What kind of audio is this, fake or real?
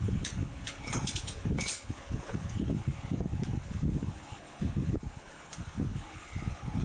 fake